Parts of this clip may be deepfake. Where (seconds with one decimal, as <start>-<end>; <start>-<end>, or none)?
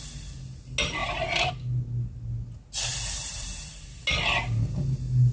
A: 1.0-1.5; 2.9-4.0